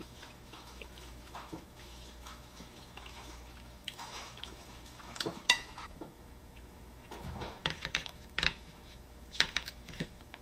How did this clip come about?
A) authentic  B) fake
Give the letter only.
B